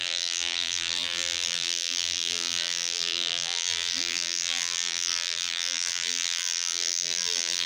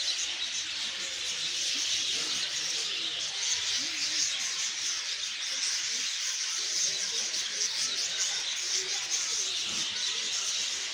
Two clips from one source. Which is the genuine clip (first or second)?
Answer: second